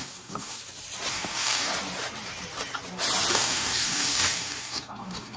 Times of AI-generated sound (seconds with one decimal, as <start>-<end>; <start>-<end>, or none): 0.0-0.6; 1.1-1.7; 3.3-5.4